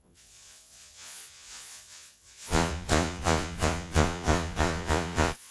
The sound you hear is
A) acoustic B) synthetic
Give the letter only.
B